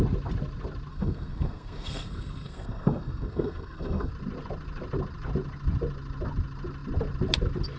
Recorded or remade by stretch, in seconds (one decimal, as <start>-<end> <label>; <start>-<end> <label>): 0.0-0.9 recorded; 0.9-4.1 remade; 4.1-7.8 recorded